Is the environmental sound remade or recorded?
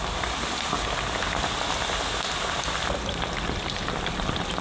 recorded